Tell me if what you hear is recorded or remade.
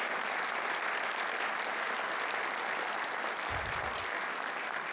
recorded